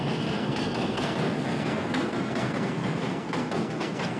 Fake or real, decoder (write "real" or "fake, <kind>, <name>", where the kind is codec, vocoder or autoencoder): fake, codec, SNAC